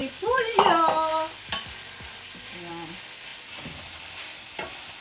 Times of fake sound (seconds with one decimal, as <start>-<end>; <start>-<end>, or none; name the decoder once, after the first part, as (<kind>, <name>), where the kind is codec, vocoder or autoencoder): 0.0-0.7 (vocoder, BigVGAN v2); 1.1-2.7